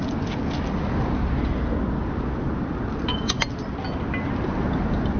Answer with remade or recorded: recorded